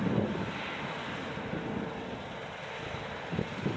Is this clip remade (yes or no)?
no